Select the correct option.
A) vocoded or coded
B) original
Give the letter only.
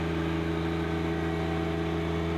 B